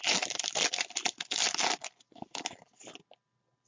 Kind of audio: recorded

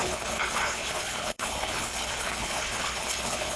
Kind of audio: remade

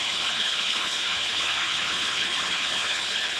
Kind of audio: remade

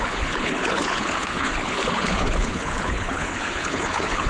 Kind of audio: remade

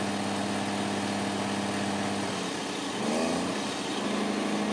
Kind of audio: recorded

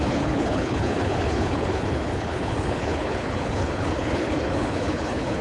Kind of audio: remade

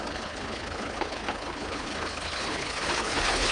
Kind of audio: remade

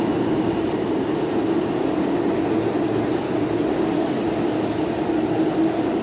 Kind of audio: recorded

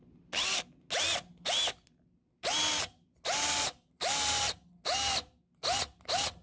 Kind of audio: recorded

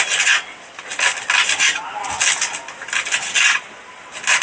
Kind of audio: recorded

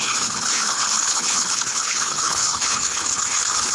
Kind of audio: remade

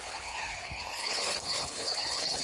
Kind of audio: remade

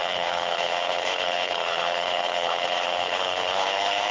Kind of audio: remade